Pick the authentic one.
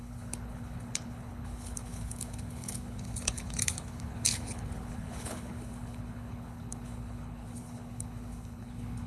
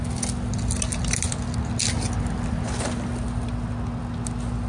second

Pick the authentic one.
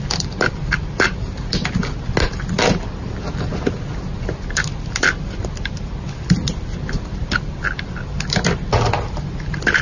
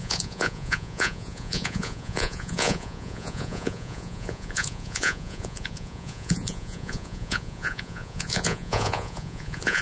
first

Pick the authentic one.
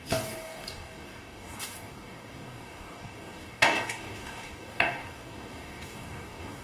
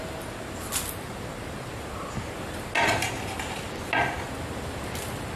second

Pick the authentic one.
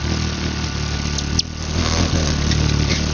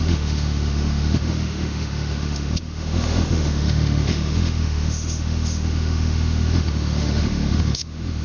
first